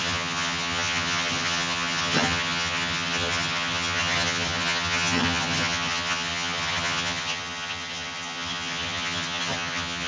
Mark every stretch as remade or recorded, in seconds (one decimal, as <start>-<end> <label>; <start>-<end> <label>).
0.0-10.1 remade